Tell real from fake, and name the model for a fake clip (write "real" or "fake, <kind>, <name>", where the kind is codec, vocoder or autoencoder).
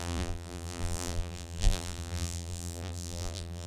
fake, vocoder, BigVGAN v2